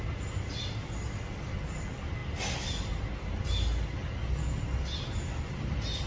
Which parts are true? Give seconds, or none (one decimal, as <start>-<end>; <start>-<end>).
0.0-6.1